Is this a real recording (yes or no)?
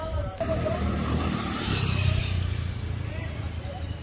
no